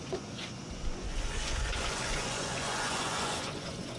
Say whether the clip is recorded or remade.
remade